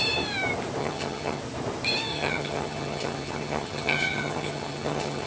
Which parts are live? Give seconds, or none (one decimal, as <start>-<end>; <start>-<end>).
0.0-0.8; 1.4-2.1